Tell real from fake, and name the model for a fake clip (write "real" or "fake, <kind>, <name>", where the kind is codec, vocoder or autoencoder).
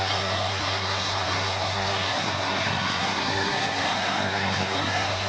fake, codec, SNAC